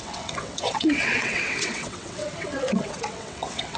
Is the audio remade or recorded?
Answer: remade